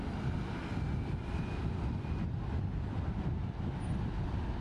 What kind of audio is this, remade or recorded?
recorded